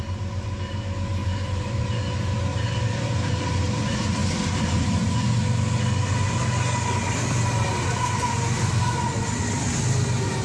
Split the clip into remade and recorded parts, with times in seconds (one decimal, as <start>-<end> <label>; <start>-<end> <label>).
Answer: 0.0-1.2 recorded; 1.2-1.8 remade; 1.8-2.5 recorded; 2.5-3.3 remade; 3.3-4.2 recorded; 4.2-5.0 remade; 5.0-10.4 recorded